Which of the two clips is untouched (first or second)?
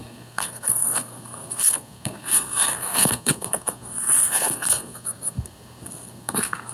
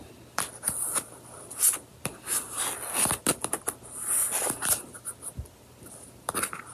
second